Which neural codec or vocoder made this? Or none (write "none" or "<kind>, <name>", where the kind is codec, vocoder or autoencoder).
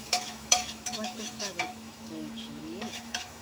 autoencoder, DAC-VAE